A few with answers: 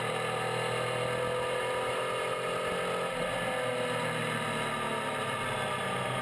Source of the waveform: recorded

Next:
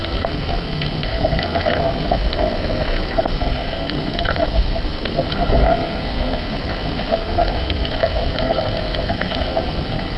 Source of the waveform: remade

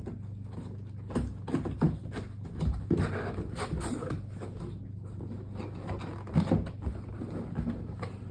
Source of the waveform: recorded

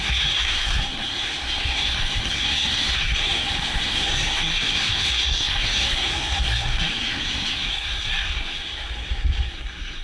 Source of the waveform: remade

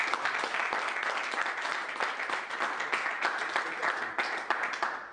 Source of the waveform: recorded